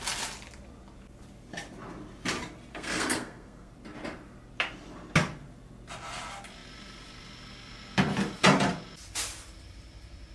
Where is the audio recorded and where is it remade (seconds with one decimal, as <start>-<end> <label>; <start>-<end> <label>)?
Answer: 0.0-2.7 recorded; 2.7-3.7 remade; 3.7-10.3 recorded